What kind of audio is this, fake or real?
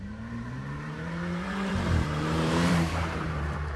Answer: fake